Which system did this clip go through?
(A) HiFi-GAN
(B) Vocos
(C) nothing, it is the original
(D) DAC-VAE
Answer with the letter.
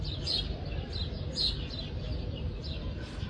C